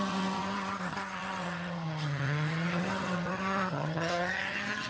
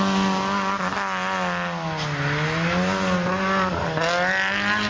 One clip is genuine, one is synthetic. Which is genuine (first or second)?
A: second